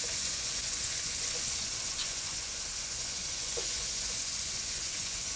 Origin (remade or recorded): remade